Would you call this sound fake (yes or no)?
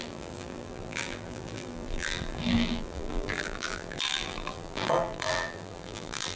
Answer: yes